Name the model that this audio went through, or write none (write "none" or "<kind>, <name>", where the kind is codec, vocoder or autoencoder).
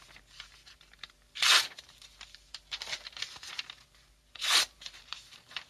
vocoder, BigVGAN v2